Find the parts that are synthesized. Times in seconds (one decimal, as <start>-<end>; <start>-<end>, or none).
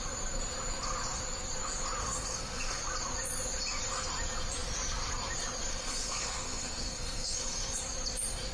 2.0-2.8; 5.7-7.8